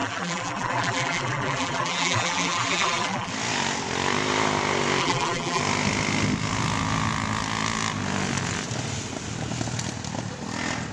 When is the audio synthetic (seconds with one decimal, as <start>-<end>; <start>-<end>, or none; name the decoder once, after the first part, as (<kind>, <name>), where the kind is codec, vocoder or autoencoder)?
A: 0.0-3.3 (vocoder, BigVGAN v2); 5.0-5.6